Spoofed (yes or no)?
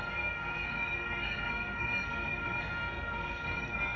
yes